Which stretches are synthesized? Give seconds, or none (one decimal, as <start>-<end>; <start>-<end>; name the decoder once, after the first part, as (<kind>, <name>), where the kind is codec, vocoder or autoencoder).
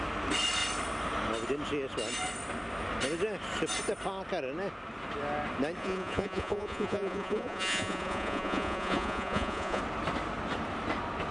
5.8-9.8 (vocoder, Vocos)